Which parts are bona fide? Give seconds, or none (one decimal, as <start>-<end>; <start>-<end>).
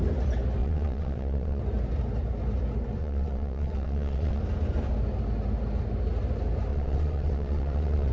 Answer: 0.0-0.6; 1.6-3.0; 4.4-6.7